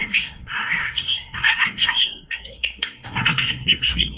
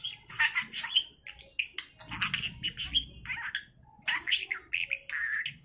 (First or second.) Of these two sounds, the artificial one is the first